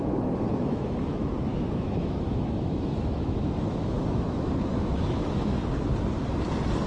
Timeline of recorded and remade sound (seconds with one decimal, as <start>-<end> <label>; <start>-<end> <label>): 0.0-5.6 remade; 5.6-6.9 recorded